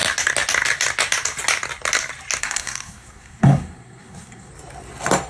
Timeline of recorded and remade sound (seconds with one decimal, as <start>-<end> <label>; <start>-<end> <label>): 0.0-2.4 recorded; 2.4-4.5 remade; 4.5-5.3 recorded